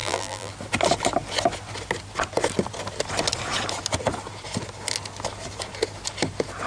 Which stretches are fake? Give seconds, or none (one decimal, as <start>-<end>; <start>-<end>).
0.0-0.5